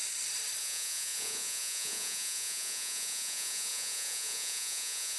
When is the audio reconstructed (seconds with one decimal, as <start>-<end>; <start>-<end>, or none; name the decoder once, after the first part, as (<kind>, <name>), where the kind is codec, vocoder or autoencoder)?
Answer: 0.6-5.2 (vocoder, Vocos)